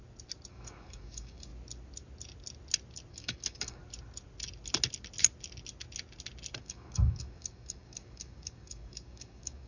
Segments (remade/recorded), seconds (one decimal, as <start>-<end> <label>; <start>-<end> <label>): 0.0-0.5 recorded; 0.5-1.5 remade; 1.5-3.1 recorded; 3.1-3.8 remade; 3.8-6.6 recorded; 6.6-9.7 remade